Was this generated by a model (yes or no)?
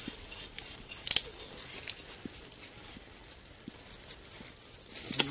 no